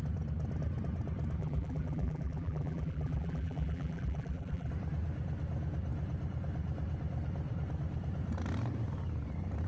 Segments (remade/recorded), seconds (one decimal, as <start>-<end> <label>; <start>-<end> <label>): 0.0-1.4 recorded; 1.4-4.7 remade; 4.7-9.7 recorded

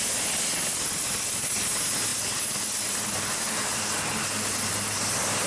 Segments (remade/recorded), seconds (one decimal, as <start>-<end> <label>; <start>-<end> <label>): 0.0-0.7 recorded; 0.7-1.5 remade; 1.5-2.1 recorded; 2.1-5.0 remade; 5.0-5.5 recorded

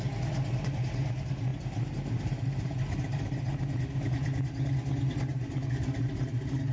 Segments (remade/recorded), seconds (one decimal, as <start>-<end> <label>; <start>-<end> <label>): 0.0-1.5 recorded; 1.5-3.6 remade; 3.6-5.3 recorded; 5.3-6.3 remade; 6.3-6.7 recorded

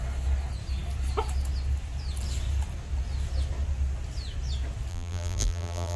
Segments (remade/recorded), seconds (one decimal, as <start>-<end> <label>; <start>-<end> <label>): 0.0-4.9 recorded; 4.9-6.0 remade

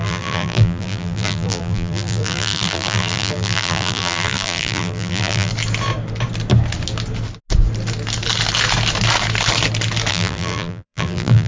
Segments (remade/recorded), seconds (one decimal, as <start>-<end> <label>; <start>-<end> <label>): 0.0-5.5 remade; 5.5-10.1 recorded; 10.1-11.5 remade